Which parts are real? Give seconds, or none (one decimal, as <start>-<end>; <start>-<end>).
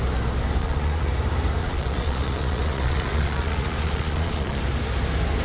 0.0-0.6; 1.1-1.6; 4.6-5.4